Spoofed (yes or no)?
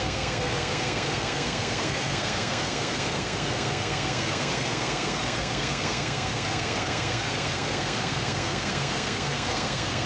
yes